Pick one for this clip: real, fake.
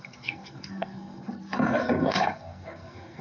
fake